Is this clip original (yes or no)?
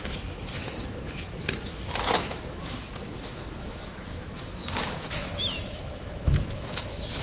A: no